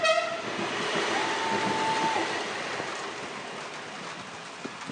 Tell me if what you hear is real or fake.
real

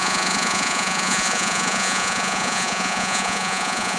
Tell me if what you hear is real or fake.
fake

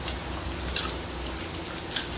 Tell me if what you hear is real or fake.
real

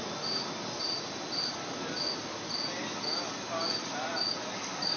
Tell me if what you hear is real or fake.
real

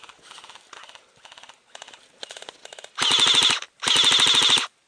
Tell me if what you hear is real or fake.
real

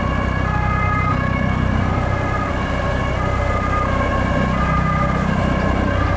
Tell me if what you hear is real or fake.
real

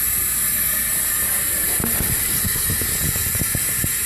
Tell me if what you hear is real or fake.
real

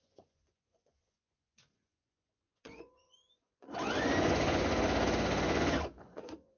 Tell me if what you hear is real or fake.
fake